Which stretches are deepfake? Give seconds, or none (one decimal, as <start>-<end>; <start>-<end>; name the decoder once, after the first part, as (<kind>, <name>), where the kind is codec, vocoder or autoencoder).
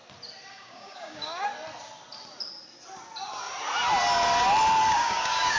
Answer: 0.5-1.5 (codec, DAC); 4.9-5.6